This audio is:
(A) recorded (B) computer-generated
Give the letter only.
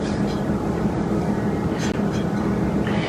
A